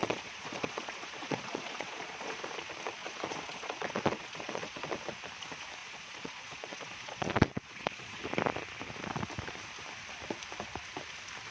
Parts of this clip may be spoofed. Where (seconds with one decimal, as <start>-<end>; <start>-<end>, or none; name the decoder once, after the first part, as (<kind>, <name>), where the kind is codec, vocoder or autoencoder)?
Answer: 0.0-2.5 (vocoder, Vocos); 3.0-4.9; 5.8-8.2